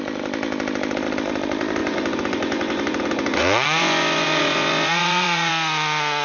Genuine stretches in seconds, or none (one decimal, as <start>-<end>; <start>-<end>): 0.0-1.8; 5.5-6.2